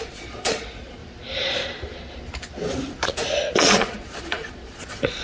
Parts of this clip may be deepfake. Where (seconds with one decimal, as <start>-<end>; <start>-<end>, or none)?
0.0-1.0; 3.6-5.2